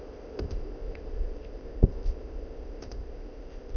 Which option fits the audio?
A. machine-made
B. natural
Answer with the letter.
A